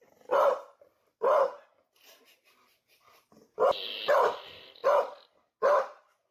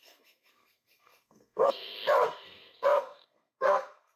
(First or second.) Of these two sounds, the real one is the first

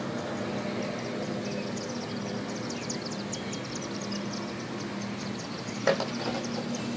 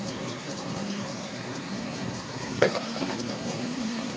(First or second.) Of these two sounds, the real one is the first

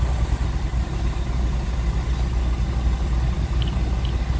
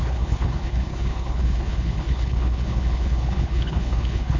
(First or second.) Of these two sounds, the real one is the first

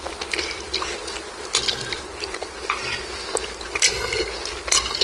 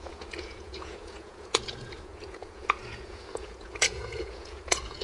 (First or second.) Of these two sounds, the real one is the first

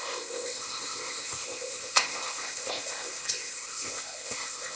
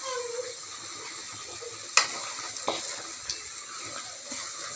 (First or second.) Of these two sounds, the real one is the second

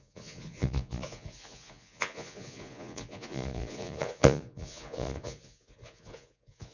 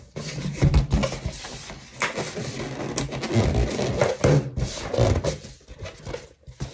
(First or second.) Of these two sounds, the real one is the second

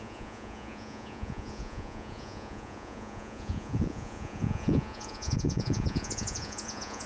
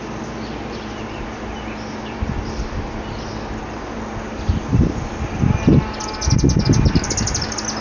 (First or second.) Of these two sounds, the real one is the second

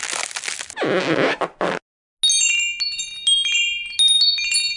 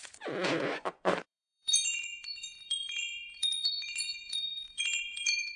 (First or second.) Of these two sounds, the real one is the first